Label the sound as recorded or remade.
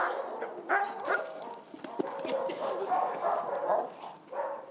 recorded